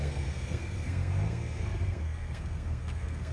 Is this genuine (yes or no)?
no